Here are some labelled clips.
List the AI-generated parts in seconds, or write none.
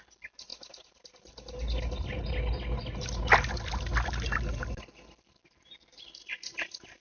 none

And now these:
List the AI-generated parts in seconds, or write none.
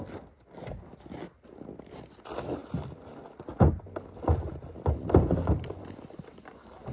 none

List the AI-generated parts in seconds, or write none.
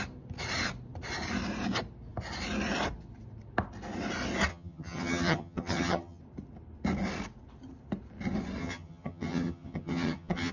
4.5-6.2 (vocoder, HiFi-GAN); 8.6-10.5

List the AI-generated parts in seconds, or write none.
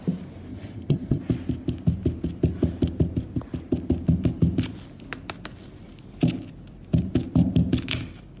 0.5-1.2 (vocoder, HiFi-GAN)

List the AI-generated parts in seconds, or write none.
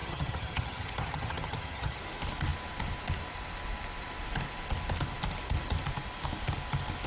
0.0-2.0 (vocoder, HiFi-GAN)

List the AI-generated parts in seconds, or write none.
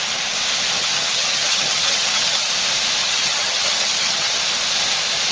0.8-2.5 (vocoder, HiFi-GAN); 3.0-4.4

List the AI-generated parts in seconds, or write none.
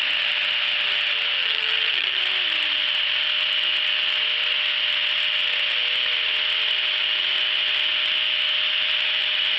1.4-2.2 (vocoder, HiFi-GAN)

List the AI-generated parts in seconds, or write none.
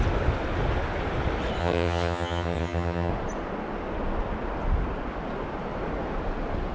1.6-3.1 (vocoder, HiFi-GAN)